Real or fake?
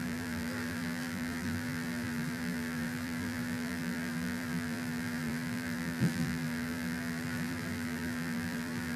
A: fake